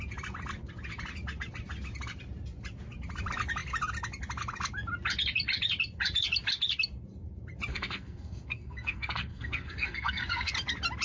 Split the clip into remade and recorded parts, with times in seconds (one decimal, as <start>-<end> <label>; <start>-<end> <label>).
0.0-7.7 recorded; 7.7-10.5 remade; 10.5-11.0 recorded